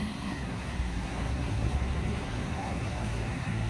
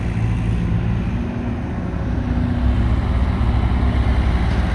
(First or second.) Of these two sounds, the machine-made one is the first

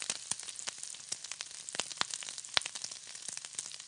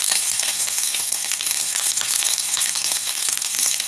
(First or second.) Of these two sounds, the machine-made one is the second